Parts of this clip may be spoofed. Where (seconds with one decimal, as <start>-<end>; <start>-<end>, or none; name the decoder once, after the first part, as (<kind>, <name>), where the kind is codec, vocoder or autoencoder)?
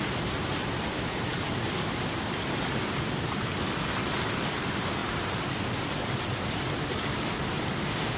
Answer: none